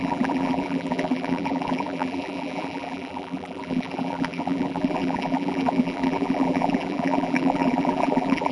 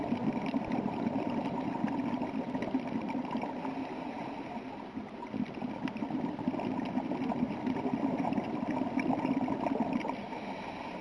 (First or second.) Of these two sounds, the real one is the second